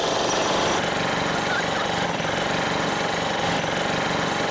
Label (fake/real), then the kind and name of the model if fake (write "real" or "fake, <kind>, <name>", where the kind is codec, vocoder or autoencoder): real